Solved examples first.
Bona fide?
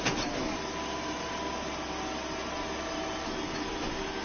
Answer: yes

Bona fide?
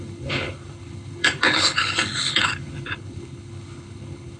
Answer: no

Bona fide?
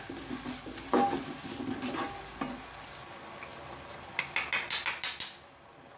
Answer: yes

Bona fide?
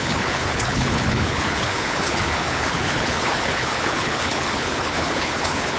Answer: no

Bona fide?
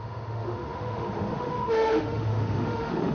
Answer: no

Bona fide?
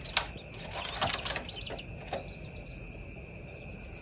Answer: yes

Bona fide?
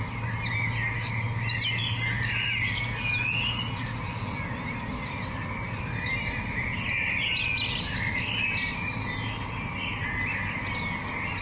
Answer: yes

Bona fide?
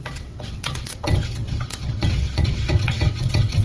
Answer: no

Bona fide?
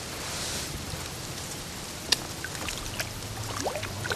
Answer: no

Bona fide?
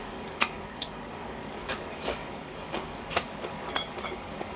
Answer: no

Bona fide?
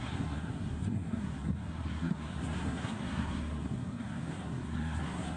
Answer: no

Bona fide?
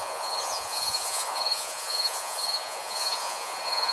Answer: no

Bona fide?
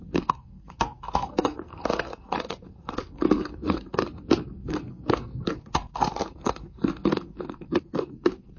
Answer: no